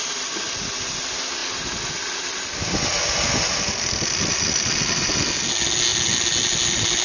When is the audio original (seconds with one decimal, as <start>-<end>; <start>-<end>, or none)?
0.0-7.0